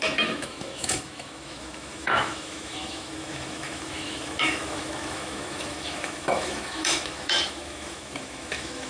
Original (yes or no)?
no